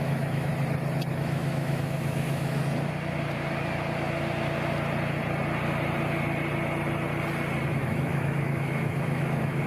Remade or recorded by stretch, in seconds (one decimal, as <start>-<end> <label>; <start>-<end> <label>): 0.0-0.5 remade; 0.5-1.1 recorded; 1.1-2.6 remade; 2.6-7.7 recorded; 7.7-9.7 remade